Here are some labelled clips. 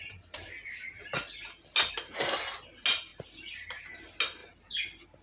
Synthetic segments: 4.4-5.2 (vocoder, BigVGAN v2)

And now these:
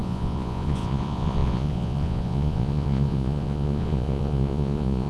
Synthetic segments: 0.0-5.1 (vocoder, Vocos)

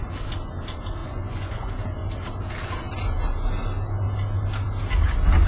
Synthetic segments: 1.0-1.7 (vocoder, Vocos)

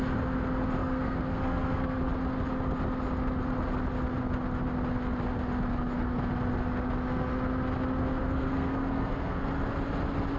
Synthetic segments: 0.8-2.0 (codec, SNAC); 8.2-9.4

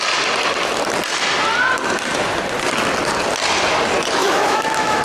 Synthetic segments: 4.2-5.0 (autoencoder, DAC-VAE)

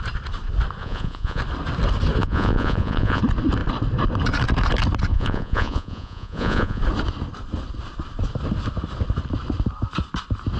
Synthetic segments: 0.8-1.4 (vocoder, Vocos); 2.2-3.2; 5.1-6.8

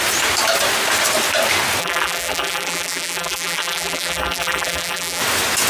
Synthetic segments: 1.8-5.2 (vocoder, BigVGAN v2)

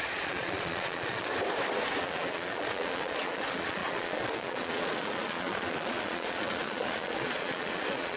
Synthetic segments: 0.0-1.3 (vocoder, Vocos); 2.0-8.2